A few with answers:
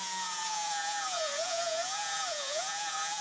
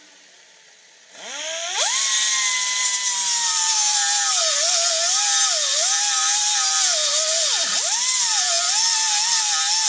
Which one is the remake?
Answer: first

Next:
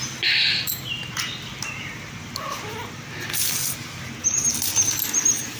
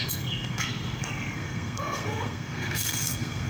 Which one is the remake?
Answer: second